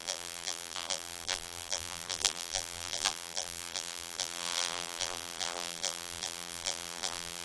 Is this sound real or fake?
fake